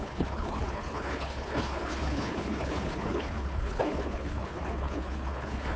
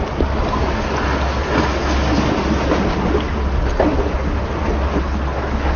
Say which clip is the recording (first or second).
second